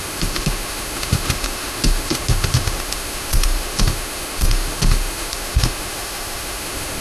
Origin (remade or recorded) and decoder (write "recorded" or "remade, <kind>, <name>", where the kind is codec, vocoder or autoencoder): remade, autoencoder, DAC-VAE